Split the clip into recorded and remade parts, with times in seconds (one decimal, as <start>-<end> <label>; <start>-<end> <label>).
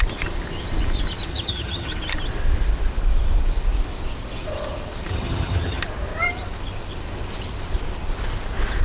0.0-1.3 recorded; 1.3-1.9 remade; 1.9-5.1 recorded; 5.1-5.8 remade; 5.8-8.8 recorded